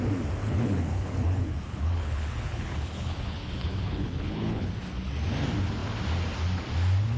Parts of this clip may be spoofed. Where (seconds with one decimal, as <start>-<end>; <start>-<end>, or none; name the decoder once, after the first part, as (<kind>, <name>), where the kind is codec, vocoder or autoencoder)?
0.4-4.7 (codec, HILCodec)